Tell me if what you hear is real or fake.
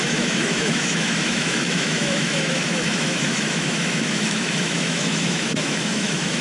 fake